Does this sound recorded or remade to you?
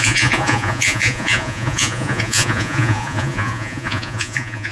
remade